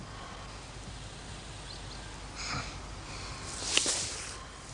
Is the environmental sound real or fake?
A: real